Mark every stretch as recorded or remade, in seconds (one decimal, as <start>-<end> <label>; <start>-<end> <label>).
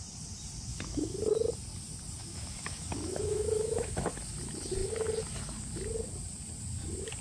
0.0-0.7 recorded; 0.7-1.2 remade; 1.2-2.2 recorded; 2.2-4.1 remade; 4.1-7.2 recorded